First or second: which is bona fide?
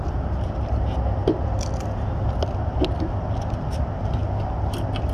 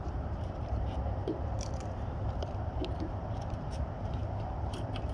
first